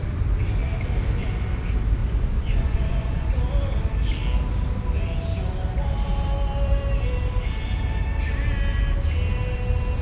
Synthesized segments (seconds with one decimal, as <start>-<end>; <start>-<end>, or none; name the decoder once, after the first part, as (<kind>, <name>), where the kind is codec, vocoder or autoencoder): 2.0-3.4 (vocoder, Vocos)